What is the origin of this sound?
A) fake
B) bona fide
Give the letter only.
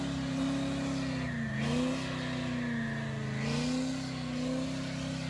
B